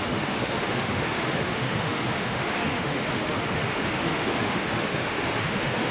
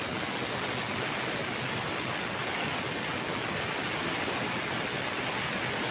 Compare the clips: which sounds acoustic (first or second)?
second